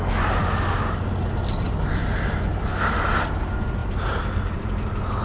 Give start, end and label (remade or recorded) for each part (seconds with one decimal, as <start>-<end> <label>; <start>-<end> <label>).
0.0-5.2 recorded